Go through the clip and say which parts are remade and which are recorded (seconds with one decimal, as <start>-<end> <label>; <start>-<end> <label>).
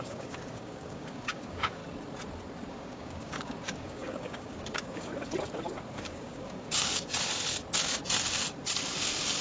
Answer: 0.0-1.8 remade; 1.8-2.7 recorded; 2.7-5.1 remade; 5.1-5.9 recorded; 5.9-7.1 remade; 7.1-9.4 recorded